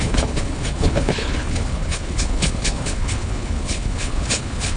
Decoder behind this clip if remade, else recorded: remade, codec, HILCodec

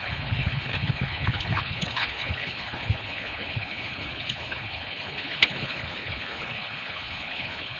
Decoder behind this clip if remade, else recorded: remade, codec, HILCodec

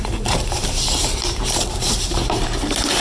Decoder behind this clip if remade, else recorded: remade, vocoder, BigVGAN v2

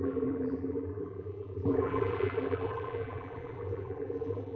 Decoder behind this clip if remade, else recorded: remade, vocoder, BigVGAN v2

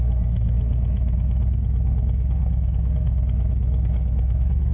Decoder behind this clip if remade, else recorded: remade, codec, SNAC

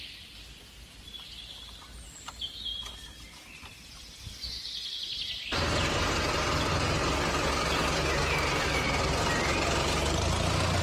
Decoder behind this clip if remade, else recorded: recorded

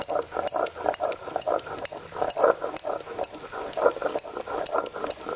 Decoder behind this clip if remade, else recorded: recorded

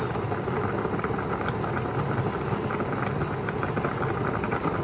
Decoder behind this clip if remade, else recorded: recorded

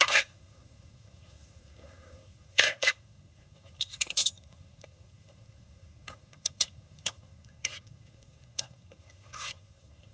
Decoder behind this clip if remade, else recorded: remade, codec, SNAC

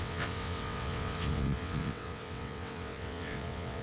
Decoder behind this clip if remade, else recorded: remade, vocoder, WaveNeXt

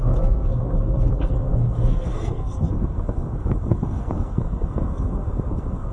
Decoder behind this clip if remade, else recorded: remade, codec, SNAC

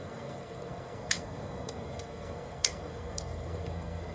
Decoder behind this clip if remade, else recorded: remade, codec, SNAC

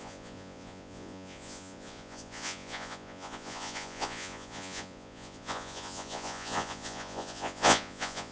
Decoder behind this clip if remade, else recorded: remade, vocoder, Vocos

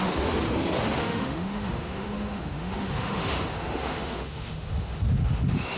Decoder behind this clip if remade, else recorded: remade, autoencoder, DAC-VAE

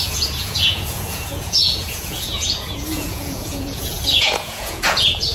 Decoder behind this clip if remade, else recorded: remade, vocoder, Vocos